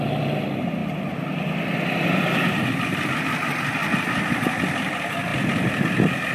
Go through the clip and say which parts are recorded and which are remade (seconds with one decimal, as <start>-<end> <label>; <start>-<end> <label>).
0.0-0.8 remade; 0.8-2.2 recorded; 2.2-3.8 remade; 3.8-4.7 recorded; 4.7-6.3 remade